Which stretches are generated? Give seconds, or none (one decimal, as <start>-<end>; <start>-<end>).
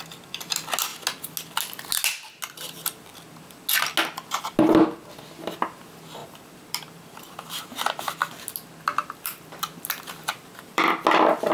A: 6.2-7.6; 9.0-10.8